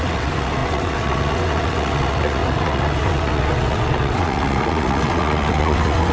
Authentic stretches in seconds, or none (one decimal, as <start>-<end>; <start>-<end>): none